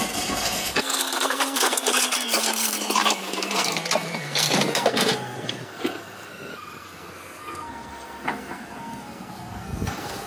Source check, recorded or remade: remade